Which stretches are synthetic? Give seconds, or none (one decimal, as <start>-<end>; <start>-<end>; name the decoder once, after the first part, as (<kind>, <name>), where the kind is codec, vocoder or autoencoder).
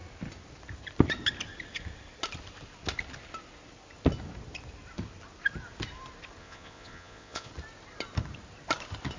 6.4-7.5 (vocoder, Vocos)